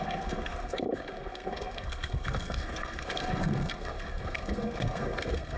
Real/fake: fake